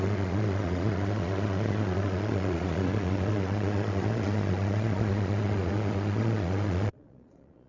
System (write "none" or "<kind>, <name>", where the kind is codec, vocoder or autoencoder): vocoder, Vocos